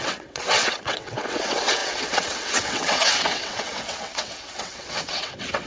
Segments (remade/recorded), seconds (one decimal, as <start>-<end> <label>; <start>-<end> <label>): 0.0-5.7 remade